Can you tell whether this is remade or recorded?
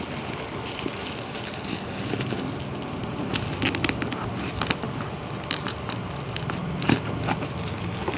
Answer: recorded